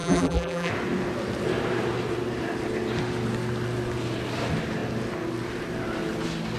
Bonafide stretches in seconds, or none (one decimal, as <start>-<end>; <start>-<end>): 0.7-6.6